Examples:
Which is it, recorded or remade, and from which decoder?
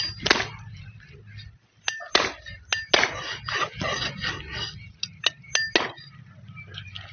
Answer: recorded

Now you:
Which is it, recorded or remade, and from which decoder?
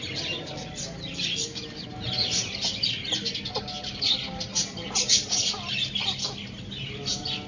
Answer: recorded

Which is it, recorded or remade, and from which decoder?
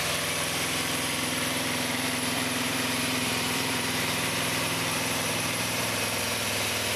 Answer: remade, vocoder, BigVGAN v2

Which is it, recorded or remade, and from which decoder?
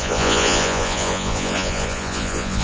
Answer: remade, vocoder, Vocos